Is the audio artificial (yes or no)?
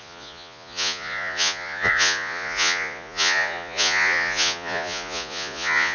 yes